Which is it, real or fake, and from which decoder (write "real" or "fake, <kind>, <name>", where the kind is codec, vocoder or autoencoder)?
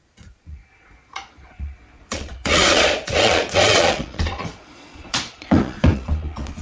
fake, vocoder, Vocos